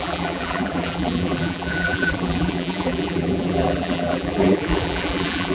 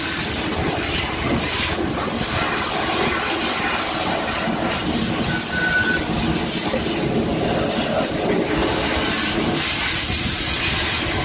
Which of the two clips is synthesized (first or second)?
first